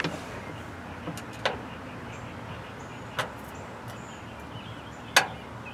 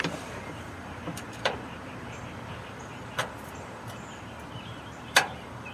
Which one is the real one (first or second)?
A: first